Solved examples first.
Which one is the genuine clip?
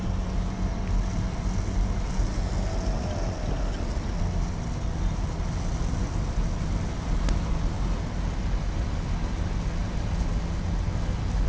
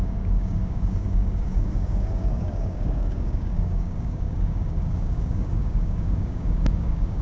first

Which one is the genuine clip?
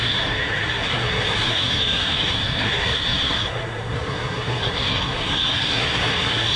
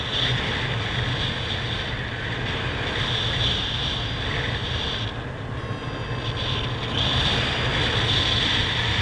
second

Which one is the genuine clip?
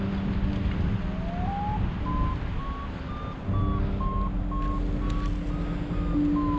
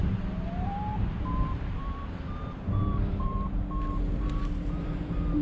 first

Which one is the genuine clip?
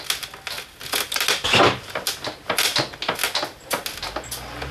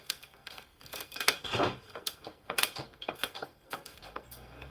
first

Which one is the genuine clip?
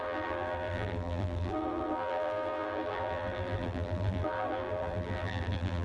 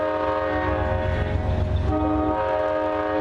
second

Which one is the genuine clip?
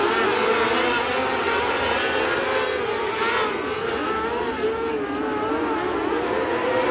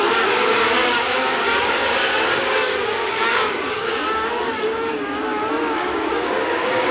first